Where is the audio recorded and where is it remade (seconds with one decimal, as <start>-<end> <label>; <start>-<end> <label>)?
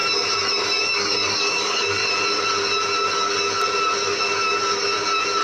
0.0-0.5 recorded; 0.5-2.0 remade; 2.0-5.4 recorded